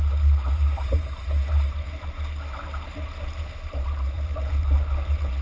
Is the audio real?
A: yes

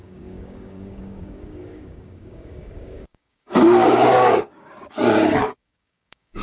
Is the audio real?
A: no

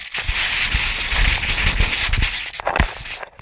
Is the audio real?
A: yes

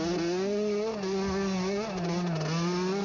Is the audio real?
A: yes